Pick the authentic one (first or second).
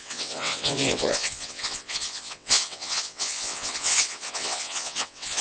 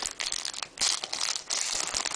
second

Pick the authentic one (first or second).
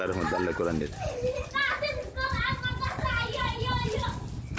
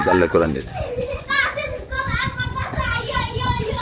first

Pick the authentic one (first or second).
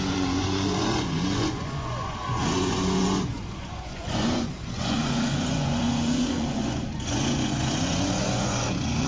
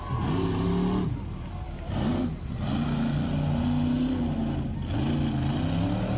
second